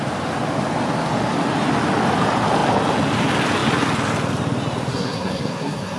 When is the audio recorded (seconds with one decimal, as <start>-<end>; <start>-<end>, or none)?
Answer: 0.0-4.9